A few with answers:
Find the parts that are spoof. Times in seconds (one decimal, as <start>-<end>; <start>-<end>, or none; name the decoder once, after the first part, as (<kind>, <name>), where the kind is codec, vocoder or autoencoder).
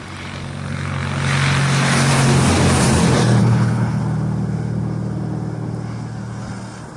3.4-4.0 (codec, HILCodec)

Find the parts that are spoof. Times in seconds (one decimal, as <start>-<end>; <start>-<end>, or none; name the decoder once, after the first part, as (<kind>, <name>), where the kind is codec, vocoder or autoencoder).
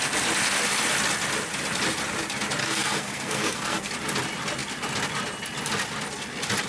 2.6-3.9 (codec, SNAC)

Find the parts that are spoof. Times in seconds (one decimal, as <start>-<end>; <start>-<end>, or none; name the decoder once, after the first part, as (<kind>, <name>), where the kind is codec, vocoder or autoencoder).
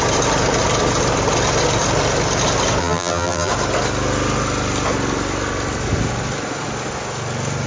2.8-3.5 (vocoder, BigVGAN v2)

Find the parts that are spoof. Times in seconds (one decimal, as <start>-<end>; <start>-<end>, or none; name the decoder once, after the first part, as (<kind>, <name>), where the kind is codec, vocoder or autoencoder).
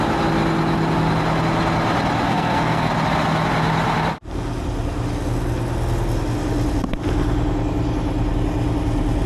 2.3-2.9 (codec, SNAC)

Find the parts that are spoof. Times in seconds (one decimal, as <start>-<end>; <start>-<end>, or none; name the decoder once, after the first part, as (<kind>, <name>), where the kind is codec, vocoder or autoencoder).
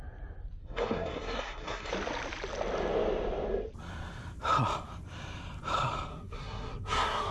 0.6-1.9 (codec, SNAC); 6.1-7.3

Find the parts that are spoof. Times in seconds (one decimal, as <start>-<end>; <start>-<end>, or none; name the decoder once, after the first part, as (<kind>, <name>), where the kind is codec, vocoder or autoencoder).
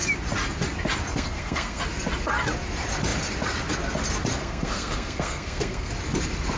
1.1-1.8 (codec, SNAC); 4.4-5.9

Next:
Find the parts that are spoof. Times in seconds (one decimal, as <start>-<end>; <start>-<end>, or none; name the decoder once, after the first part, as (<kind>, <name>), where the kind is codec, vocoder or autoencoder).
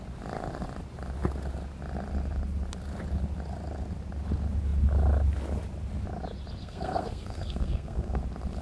6.6-8.2 (codec, SNAC)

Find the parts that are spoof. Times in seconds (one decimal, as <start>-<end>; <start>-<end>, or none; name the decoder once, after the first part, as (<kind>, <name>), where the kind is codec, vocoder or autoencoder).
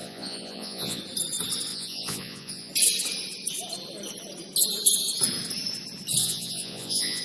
0.0-1.0 (vocoder, Vocos); 1.7-2.7; 6.2-7.2